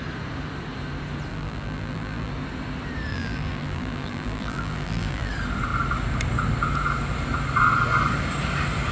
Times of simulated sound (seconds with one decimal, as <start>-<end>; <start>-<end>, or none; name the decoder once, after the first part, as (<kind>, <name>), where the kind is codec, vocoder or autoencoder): 1.3-2.3 (vocoder, BigVGAN v2); 3.1-5.3